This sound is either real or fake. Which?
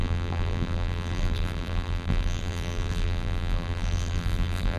fake